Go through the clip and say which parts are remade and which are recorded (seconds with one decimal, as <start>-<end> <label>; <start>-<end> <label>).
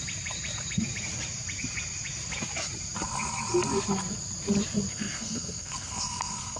0.0-4.9 recorded; 4.9-6.6 remade